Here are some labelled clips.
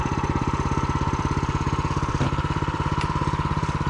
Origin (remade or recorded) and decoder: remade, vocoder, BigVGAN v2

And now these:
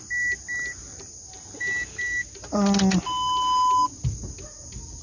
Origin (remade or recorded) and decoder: recorded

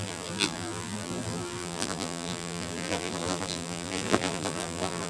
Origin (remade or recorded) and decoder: remade, vocoder, BigVGAN v2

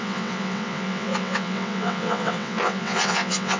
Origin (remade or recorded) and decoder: remade, vocoder, WaveNeXt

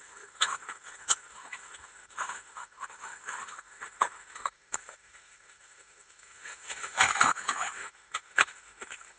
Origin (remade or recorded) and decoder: remade, autoencoder, DAC-VAE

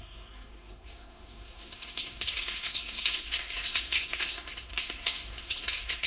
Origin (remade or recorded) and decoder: remade, codec, SNAC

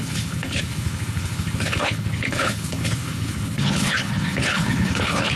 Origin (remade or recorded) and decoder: remade, codec, HILCodec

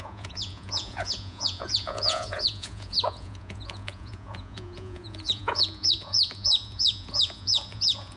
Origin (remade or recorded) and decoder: remade, vocoder, Vocos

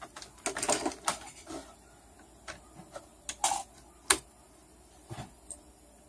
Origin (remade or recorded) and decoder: recorded